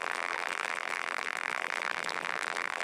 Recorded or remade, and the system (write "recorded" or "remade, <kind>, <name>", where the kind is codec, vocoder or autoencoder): remade, vocoder, BigVGAN v2